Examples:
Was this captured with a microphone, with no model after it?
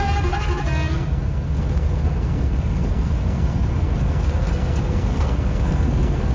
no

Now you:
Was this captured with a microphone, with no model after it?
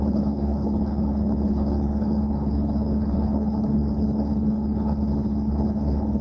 no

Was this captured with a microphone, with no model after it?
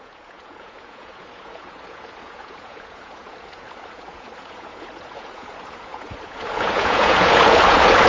no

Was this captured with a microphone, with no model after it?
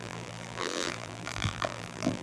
no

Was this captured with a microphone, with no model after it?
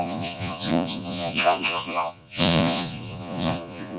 no